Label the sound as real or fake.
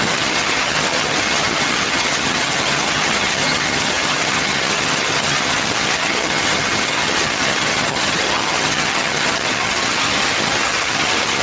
fake